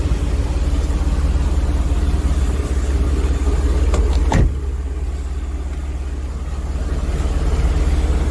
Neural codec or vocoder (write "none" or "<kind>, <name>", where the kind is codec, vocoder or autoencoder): none